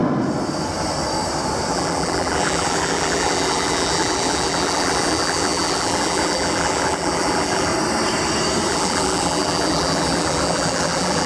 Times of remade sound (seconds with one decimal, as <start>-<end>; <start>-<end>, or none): 1.7-7.7; 8.7-11.3